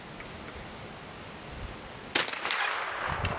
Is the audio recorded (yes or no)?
yes